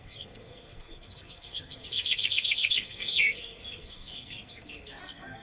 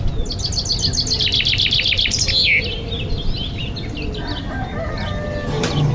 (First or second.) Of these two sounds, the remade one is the first